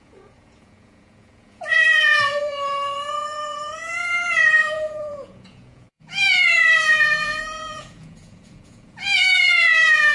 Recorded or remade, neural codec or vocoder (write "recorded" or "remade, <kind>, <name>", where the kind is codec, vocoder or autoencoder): remade, vocoder, Vocos